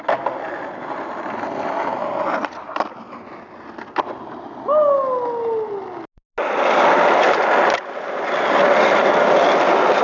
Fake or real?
real